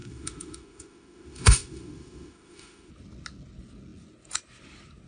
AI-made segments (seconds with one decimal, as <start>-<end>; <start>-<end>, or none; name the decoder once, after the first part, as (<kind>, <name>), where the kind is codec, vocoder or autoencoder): 0.0-2.9 (autoencoder, DAC-VAE)